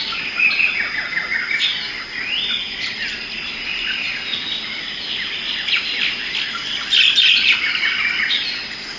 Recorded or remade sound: recorded